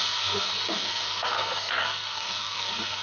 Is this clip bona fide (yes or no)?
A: no